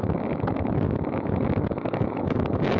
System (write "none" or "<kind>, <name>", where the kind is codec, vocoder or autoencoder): autoencoder, DAC-VAE